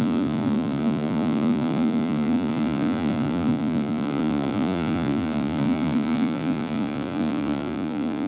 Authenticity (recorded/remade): remade